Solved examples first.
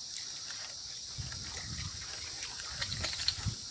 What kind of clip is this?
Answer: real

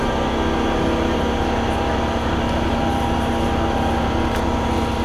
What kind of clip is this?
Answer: real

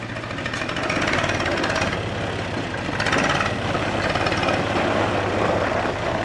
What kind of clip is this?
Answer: real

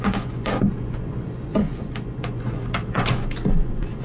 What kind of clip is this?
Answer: fake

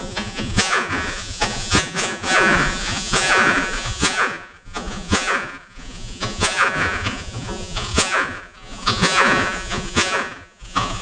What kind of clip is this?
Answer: fake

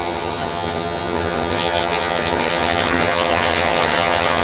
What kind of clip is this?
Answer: fake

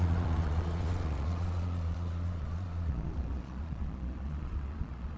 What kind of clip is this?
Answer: fake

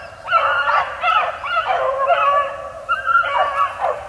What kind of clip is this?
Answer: real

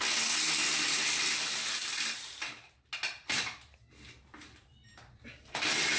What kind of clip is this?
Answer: real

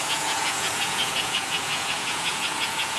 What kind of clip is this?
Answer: fake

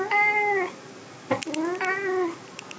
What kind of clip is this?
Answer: real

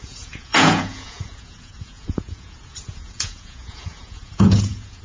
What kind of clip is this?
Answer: fake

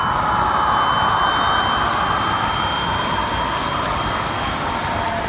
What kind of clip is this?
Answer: real